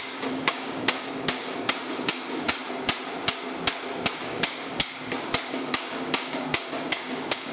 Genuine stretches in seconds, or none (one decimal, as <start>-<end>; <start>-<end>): 2.6-4.1; 4.9-5.5